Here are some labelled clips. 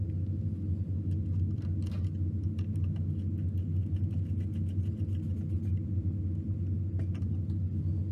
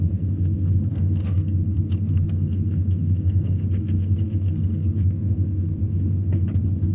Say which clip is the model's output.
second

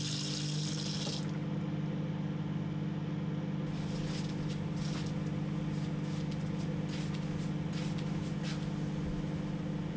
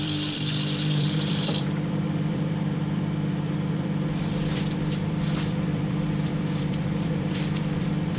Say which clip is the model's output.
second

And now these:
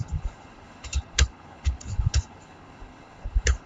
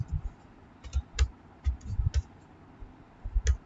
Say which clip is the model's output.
first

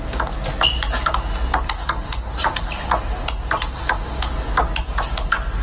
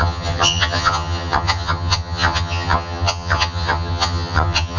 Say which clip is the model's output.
second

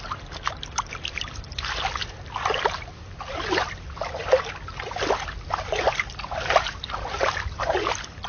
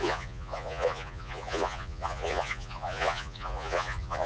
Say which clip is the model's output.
second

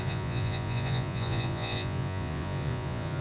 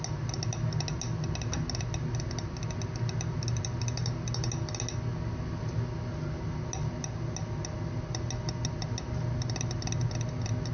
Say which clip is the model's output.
first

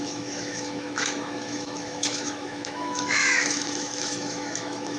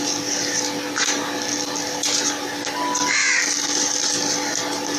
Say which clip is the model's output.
first